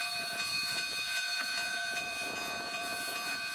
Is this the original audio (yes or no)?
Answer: no